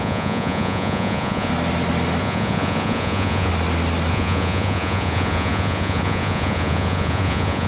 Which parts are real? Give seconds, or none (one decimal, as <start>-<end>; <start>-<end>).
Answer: 1.5-2.2; 3.5-4.1